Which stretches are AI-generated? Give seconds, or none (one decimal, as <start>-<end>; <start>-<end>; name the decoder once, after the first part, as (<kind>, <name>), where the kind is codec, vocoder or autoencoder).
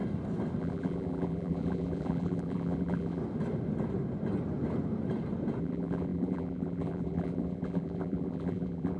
0.6-3.2 (vocoder, BigVGAN v2); 5.6-9.0